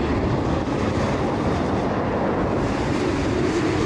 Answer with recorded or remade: recorded